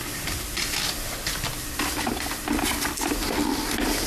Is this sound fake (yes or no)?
no